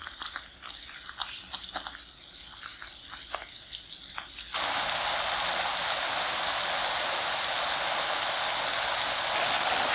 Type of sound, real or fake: real